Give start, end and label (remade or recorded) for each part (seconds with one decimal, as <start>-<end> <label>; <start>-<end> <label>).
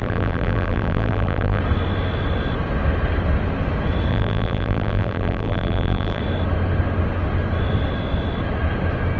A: 0.0-1.6 remade; 1.6-4.1 recorded; 4.1-6.2 remade; 6.2-9.2 recorded